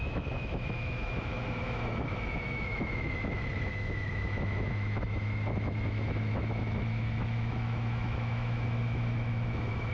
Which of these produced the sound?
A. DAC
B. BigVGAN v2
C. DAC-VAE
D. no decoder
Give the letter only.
C